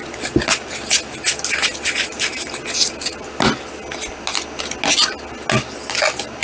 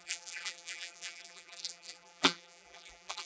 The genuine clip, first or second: first